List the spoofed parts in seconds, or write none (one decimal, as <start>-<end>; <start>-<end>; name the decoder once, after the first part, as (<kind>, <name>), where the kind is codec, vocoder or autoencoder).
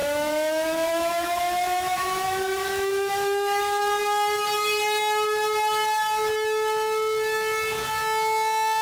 0.0-3.8 (autoencoder, DAC-VAE)